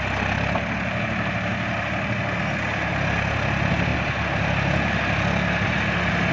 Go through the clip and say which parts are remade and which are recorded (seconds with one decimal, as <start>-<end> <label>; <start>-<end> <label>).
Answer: 0.0-6.3 recorded

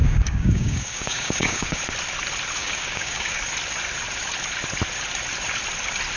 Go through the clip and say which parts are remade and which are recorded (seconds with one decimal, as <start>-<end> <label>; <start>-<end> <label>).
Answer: 0.0-1.8 remade; 1.8-2.6 recorded; 2.6-3.4 remade; 3.4-6.2 recorded

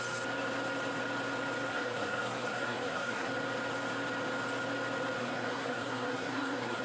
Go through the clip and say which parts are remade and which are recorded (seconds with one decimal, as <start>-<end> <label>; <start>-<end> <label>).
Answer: 0.0-1.7 recorded; 1.7-3.3 remade; 3.3-5.2 recorded; 5.2-6.8 remade

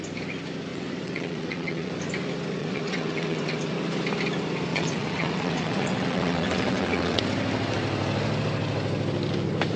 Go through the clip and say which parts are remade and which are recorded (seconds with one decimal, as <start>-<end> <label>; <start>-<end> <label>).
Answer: 0.0-0.7 recorded; 0.7-1.9 remade; 1.9-2.6 recorded; 2.6-3.7 remade; 3.7-4.7 recorded; 4.7-7.2 remade; 7.2-9.8 recorded

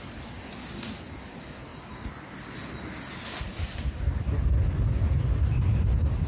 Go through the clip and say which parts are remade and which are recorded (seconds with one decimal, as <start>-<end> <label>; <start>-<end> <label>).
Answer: 0.0-6.3 recorded

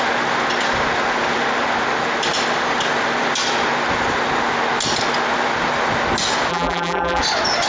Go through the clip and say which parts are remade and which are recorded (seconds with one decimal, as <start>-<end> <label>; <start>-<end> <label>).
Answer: 0.0-6.5 recorded; 6.5-7.2 remade; 7.2-7.7 recorded

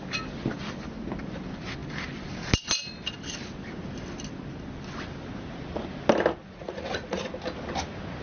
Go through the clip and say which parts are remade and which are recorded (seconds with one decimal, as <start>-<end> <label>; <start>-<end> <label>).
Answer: 0.0-6.4 recorded; 6.4-7.3 remade; 7.3-8.2 recorded

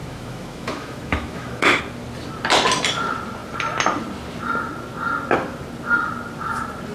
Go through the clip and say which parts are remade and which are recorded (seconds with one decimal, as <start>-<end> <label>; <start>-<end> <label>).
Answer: 0.0-1.8 remade; 1.8-6.9 recorded